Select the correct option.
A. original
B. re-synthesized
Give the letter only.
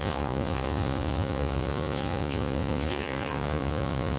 B